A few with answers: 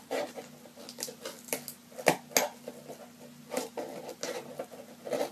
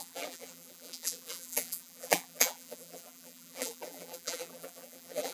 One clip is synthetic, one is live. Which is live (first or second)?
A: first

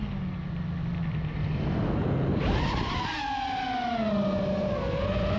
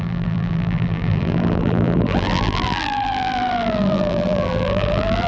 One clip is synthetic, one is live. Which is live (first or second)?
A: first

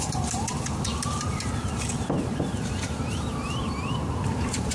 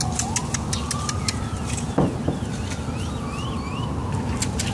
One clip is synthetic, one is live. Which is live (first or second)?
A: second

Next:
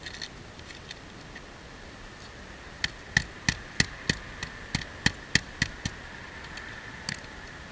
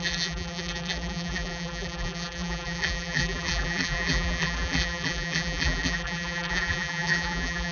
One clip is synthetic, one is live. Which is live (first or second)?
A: first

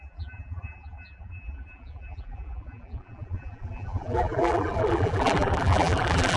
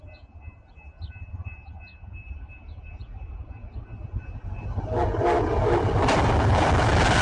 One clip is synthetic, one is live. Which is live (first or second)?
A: second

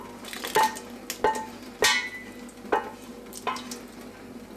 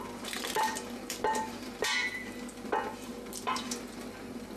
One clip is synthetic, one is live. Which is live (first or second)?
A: first